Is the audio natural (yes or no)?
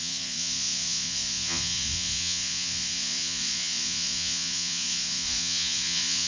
no